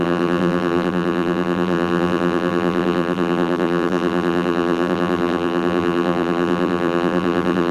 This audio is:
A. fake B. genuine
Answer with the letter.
A